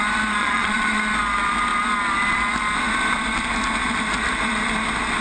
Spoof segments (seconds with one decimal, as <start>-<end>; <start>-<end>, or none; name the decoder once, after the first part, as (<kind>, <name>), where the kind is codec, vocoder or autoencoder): 0.4-1.0 (vocoder, Vocos)

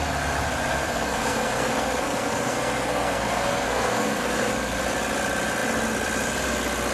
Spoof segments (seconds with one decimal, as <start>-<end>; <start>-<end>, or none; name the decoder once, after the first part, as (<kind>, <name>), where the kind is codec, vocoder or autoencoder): 0.7-4.8 (codec, SNAC)